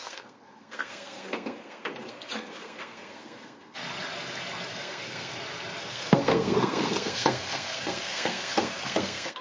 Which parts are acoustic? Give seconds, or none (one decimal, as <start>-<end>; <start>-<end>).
3.8-4.8; 5.3-5.8